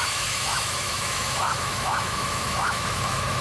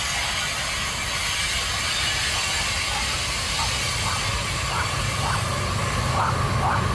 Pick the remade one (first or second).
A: first